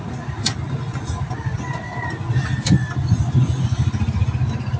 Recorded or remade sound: recorded